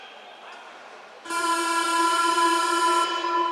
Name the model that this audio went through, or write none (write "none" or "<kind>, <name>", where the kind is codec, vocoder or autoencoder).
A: none